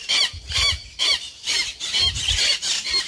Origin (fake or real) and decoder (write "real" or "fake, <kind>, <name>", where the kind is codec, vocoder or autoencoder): fake, vocoder, BigVGAN v2